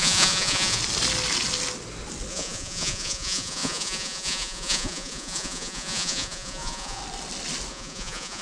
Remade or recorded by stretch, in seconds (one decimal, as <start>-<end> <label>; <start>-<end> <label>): 0.0-0.8 remade; 0.8-2.3 recorded; 2.3-7.0 remade; 7.0-7.7 recorded; 7.7-8.4 remade